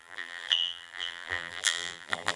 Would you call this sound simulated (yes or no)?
yes